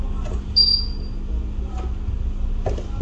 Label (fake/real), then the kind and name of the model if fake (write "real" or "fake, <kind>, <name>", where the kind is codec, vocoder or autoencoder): real